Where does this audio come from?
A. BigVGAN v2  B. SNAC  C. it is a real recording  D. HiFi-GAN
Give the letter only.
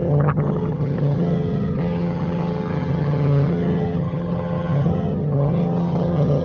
D